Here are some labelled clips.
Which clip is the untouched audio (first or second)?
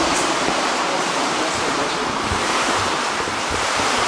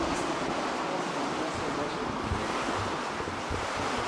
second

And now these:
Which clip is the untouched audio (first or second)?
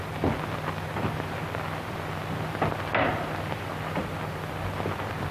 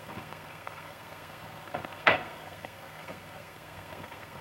first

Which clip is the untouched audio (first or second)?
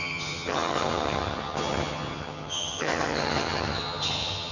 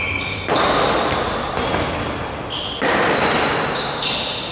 second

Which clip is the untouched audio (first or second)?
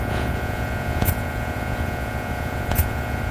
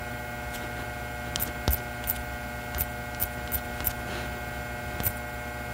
second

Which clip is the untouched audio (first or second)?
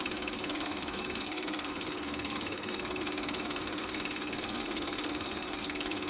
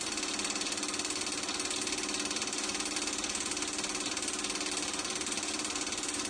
second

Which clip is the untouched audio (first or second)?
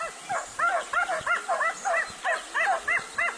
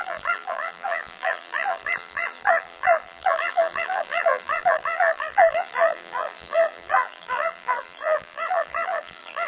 first